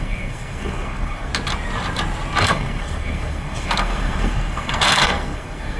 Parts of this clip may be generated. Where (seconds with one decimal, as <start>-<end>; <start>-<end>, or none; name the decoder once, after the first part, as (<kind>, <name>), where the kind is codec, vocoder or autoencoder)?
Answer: 0.0-1.3 (codec, SNAC); 2.4-5.8